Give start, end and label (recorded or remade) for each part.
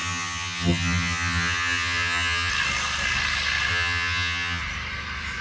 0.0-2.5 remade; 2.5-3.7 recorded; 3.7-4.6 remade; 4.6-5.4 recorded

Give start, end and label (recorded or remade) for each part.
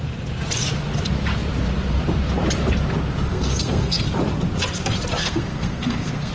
0.0-3.3 recorded; 3.3-4.0 remade; 4.0-5.2 recorded; 5.2-6.3 remade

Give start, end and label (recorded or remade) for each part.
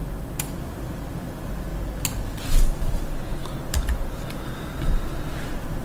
0.0-1.7 remade; 1.7-2.4 recorded; 2.4-5.8 remade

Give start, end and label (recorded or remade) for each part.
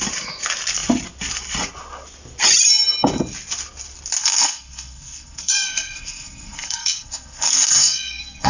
0.0-4.2 recorded; 4.2-8.5 remade